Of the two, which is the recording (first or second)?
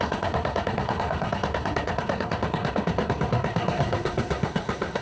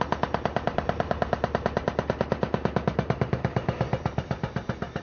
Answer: second